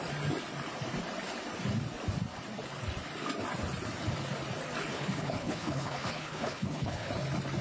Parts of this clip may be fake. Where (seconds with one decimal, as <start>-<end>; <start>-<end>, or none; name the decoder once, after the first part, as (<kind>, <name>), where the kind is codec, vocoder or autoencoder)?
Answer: 4.9-7.1 (codec, HILCodec)